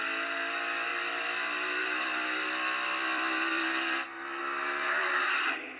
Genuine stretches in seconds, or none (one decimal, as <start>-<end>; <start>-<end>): 0.0-0.9; 4.4-5.8